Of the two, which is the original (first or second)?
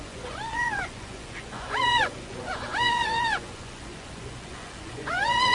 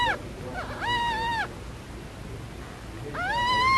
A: second